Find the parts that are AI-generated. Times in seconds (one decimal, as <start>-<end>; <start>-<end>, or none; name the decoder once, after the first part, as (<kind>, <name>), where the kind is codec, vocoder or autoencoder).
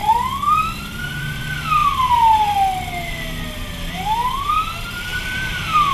0.0-1.4 (vocoder, BigVGAN v2); 5.1-5.9